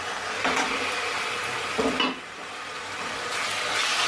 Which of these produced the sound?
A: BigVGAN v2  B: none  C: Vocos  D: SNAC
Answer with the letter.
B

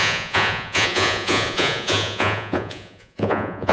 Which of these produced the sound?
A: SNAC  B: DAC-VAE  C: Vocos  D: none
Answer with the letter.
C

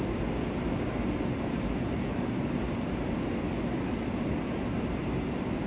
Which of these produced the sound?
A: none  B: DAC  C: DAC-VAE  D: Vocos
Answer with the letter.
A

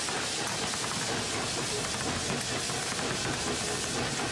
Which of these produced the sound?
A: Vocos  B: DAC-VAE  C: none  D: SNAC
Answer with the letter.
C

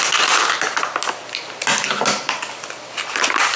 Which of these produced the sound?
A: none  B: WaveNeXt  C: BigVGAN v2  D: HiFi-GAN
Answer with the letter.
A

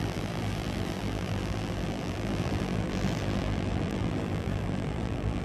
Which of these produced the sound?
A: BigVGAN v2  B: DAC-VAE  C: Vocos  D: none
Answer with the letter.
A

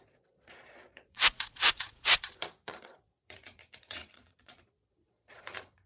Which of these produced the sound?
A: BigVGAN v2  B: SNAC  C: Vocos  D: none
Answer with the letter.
C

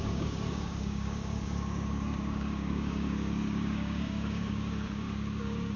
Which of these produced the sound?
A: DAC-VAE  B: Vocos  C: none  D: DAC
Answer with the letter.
D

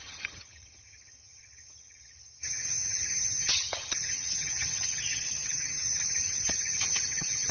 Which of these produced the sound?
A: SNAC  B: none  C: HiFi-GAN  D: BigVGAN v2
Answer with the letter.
C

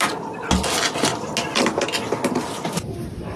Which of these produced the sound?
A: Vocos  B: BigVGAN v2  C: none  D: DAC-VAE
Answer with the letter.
C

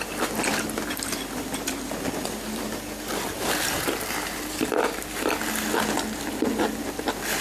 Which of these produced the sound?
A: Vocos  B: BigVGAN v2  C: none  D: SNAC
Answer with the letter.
B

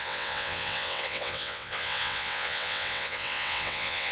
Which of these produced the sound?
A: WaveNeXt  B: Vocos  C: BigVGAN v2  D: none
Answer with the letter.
A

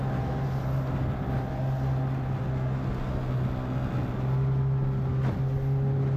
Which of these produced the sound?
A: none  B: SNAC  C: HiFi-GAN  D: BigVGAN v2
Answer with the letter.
A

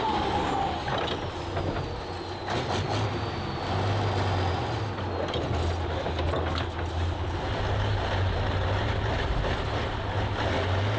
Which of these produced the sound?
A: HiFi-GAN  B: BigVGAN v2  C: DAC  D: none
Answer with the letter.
D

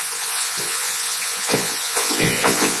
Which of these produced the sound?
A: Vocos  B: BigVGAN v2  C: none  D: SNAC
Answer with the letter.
A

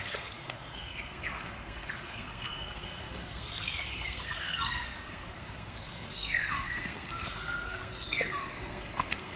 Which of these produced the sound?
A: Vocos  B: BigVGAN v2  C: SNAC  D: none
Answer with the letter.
C